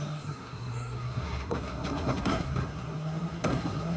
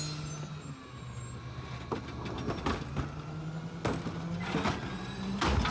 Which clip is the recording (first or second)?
second